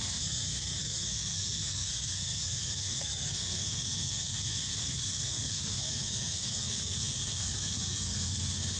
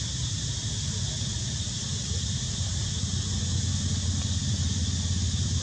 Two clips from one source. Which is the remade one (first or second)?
first